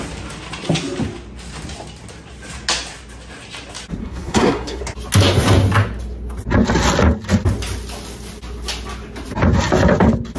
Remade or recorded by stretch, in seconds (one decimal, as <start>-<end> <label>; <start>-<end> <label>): 0.0-4.0 recorded; 4.0-4.8 remade; 4.8-10.4 recorded